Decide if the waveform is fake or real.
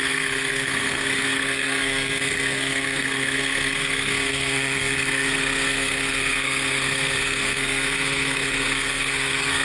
fake